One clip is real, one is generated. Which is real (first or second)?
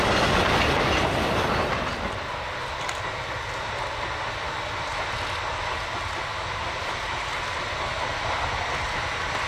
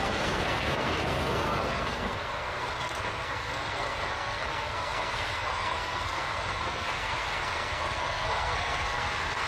first